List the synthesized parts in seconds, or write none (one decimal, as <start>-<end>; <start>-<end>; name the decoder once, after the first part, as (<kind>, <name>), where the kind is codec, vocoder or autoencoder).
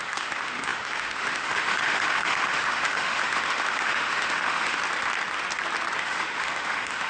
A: 0.0-4.8 (autoencoder, DAC-VAE); 6.0-7.1